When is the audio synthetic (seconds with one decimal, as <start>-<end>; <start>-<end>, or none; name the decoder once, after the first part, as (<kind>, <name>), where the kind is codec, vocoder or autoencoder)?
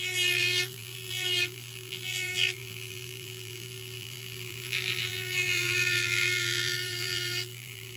0.0-8.0 (vocoder, BigVGAN v2)